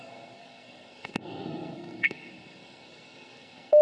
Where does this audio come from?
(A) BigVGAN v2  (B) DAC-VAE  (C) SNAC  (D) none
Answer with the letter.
C